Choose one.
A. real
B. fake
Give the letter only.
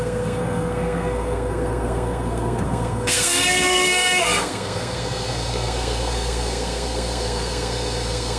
B